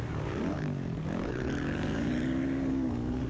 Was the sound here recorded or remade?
remade